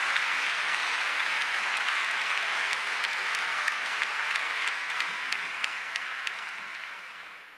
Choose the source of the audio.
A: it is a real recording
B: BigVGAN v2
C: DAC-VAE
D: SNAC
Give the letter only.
D